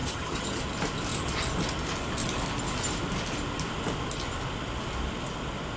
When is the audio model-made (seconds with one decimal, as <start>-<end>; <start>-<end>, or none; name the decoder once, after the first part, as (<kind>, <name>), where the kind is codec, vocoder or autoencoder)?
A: 0.0-0.6 (vocoder, HiFi-GAN)